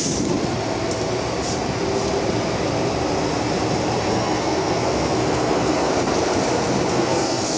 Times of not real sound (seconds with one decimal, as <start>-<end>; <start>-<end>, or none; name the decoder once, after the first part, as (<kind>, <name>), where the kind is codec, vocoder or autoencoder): 4.1-5.9 (codec, SNAC); 6.9-7.6